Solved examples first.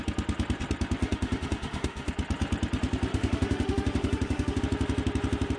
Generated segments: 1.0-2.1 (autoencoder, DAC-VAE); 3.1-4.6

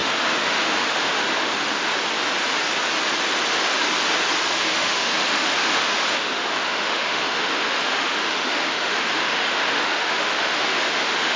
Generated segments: 0.0-1.9 (autoencoder, DAC-VAE); 4.5-11.4

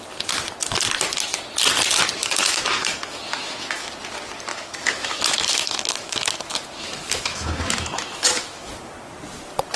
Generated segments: 2.2-3.9 (autoencoder, DAC-VAE); 4.5-8.7

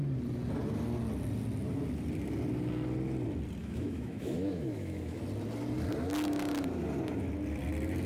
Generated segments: 3.6-5.2 (autoencoder, DAC-VAE)

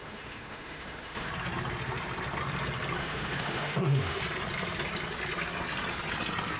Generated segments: 0.0-1.3 (autoencoder, DAC-VAE); 3.0-4.2